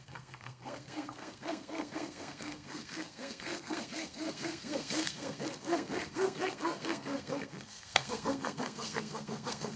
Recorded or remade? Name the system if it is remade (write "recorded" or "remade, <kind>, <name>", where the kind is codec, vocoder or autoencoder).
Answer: remade, codec, SNAC